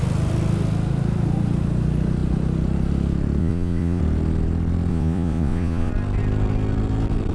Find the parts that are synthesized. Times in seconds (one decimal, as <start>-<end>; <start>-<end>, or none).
3.4-4.0; 4.9-5.9